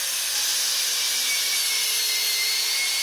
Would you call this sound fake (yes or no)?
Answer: no